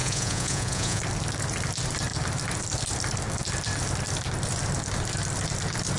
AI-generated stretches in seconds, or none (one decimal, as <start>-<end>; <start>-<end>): 0.0-1.0